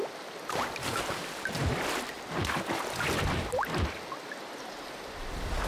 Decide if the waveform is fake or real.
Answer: real